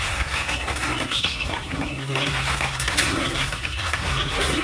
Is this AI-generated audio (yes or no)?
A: yes